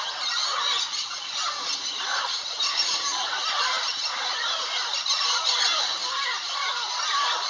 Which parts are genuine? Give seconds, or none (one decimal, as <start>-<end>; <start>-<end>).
0.0-7.5